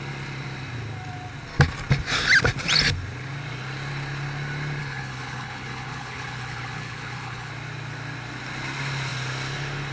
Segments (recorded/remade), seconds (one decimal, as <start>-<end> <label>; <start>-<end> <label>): 0.0-4.8 recorded; 4.8-7.5 remade; 7.5-9.9 recorded